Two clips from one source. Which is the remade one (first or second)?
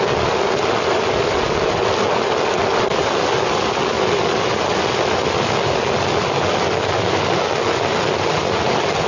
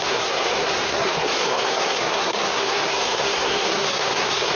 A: second